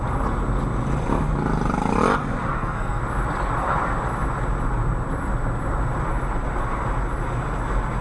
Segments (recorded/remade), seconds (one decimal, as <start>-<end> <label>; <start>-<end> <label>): 0.0-2.5 recorded; 2.5-3.0 remade; 3.0-8.0 recorded